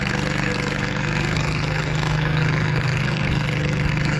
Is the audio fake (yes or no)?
yes